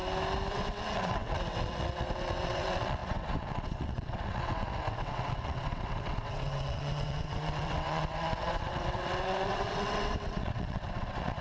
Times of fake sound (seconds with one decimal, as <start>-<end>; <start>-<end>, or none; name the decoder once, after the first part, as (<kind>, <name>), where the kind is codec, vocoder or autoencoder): 0.5-11.4 (vocoder, WaveNeXt)